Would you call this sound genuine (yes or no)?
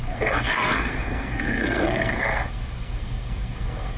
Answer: no